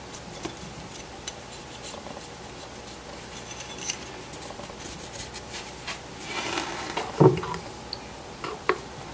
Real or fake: fake